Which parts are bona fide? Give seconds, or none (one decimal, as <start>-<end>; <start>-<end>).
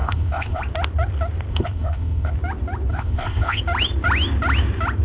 0.6-1.5; 2.3-2.9; 3.6-5.0